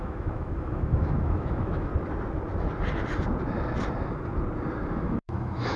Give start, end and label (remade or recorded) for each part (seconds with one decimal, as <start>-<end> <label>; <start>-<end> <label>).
0.0-1.9 remade; 1.9-4.9 recorded; 4.9-5.8 remade